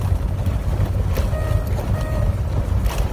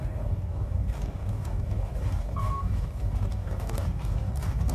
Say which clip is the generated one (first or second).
second